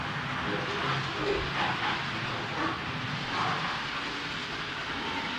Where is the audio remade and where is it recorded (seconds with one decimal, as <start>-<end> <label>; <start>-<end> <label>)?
0.0-5.4 recorded